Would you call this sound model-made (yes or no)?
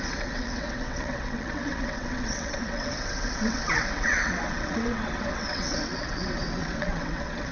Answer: yes